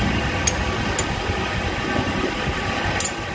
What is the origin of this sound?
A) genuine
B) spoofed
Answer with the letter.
A